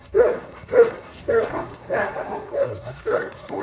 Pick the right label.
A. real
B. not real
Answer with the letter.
B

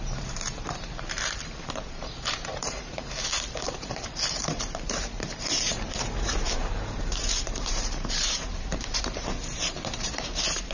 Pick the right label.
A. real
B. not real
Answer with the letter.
B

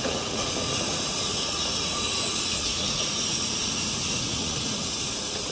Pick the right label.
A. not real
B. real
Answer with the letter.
A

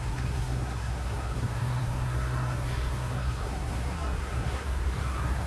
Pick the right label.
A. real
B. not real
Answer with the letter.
B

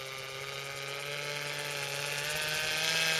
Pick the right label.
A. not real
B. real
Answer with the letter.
B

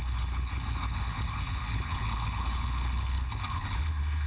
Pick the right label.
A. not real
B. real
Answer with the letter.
A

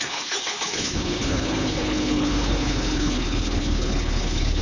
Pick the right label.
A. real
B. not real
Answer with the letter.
B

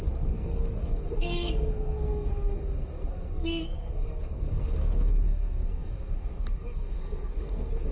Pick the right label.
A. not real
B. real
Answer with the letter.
A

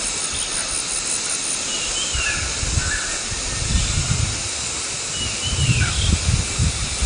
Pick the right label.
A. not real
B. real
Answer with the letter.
B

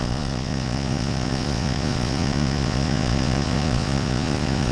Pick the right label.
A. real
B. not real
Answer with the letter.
B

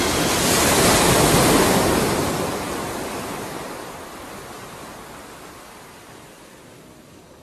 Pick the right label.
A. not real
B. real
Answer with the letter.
B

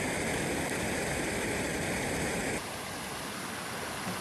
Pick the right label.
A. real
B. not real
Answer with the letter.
A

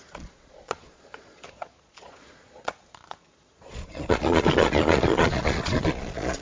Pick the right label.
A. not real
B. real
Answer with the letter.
A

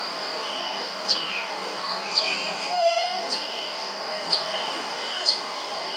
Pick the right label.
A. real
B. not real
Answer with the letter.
B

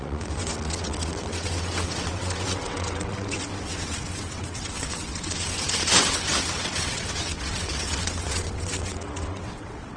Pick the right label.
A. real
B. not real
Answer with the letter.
B